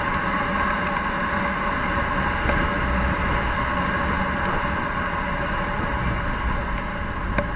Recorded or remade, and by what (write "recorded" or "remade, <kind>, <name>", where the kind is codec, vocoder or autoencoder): recorded